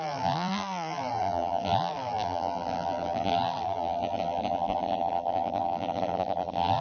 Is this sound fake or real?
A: fake